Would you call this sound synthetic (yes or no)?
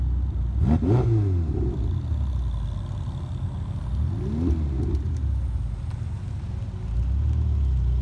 no